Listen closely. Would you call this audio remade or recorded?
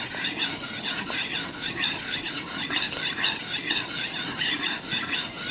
recorded